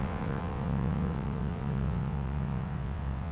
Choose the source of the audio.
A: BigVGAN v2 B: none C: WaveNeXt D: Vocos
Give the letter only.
C